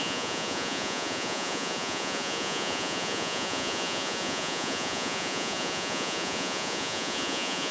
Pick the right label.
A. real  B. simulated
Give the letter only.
B